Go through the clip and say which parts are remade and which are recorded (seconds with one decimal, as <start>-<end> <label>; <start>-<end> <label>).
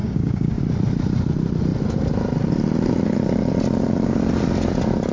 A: 0.0-0.6 remade; 0.6-5.1 recorded